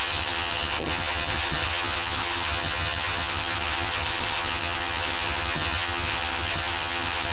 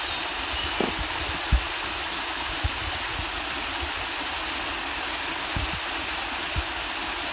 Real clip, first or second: second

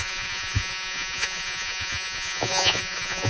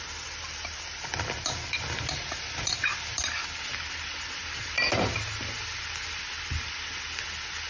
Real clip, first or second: second